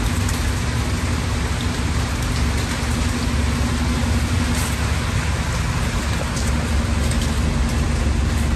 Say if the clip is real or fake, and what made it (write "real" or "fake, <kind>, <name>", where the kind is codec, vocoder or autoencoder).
real